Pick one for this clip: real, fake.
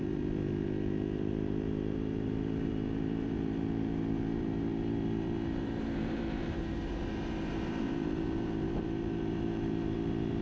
fake